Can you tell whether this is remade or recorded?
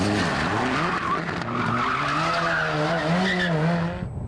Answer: recorded